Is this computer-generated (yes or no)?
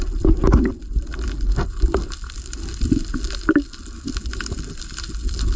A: no